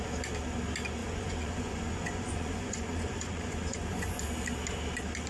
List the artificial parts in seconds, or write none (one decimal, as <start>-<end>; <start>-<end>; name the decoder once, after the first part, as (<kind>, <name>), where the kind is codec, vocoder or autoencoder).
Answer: 1.0-4.2 (vocoder, Vocos)